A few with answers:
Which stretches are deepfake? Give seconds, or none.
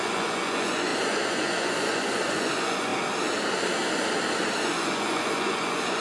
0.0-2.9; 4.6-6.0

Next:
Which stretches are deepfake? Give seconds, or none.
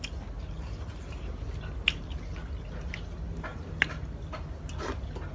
none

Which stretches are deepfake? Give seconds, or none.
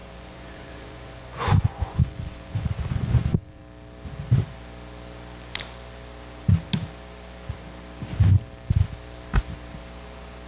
0.0-3.6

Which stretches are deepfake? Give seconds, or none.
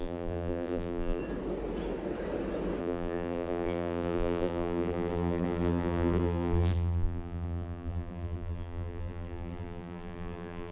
0.0-1.2; 2.8-10.7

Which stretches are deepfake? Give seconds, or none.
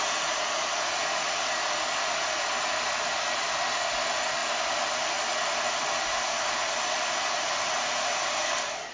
none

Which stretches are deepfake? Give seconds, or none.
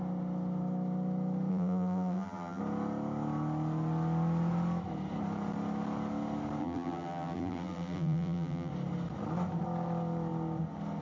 1.5-2.6; 6.6-8.7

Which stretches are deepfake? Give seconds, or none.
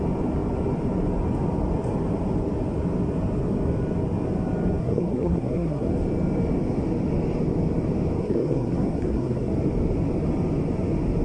4.8-5.9; 8.2-9.5